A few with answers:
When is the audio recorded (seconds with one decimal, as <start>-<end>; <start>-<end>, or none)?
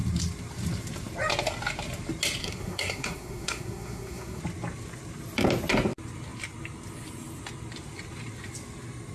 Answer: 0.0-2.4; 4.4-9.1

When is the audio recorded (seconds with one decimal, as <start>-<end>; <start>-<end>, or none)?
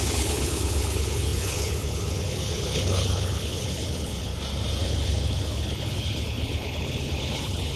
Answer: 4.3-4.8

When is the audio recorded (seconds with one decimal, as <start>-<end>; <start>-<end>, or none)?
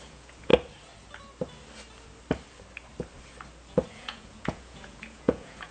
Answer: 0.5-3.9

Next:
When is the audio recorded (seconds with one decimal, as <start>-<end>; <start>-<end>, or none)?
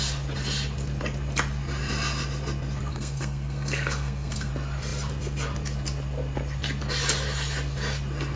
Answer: 0.0-2.9; 4.5-8.4